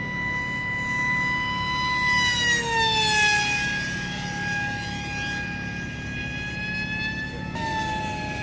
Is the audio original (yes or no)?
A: yes